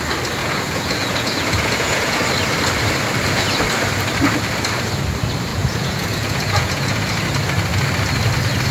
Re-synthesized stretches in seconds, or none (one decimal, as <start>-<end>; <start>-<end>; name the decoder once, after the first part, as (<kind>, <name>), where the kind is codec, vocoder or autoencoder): 0.4-2.2 (vocoder, Vocos); 5.5-7.1